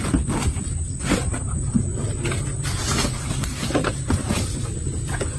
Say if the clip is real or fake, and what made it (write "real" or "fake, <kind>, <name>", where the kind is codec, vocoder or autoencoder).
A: real